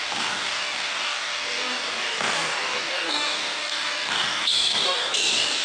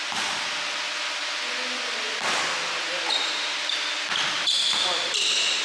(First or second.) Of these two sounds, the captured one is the second